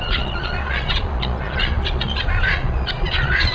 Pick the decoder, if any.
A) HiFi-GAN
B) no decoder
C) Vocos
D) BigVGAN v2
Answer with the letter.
C